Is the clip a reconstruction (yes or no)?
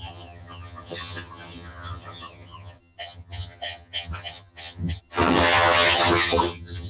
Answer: yes